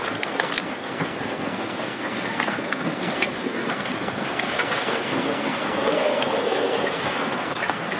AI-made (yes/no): yes